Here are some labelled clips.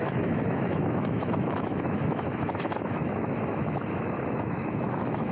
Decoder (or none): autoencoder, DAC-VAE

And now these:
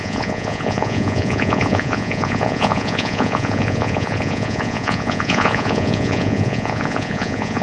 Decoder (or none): vocoder, Vocos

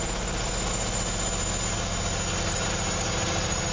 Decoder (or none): none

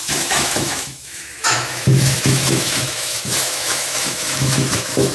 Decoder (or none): autoencoder, DAC-VAE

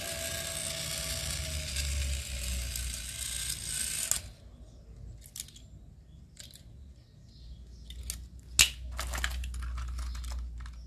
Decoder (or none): none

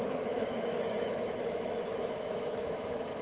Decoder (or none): autoencoder, DAC-VAE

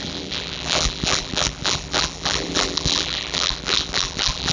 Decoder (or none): vocoder, BigVGAN v2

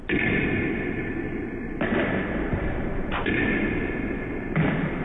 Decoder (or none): none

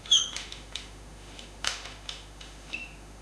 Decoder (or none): autoencoder, DAC-VAE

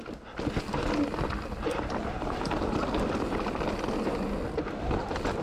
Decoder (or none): none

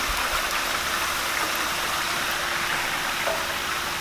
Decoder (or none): none